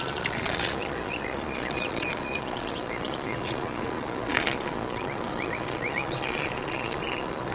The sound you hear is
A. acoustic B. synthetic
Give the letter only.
B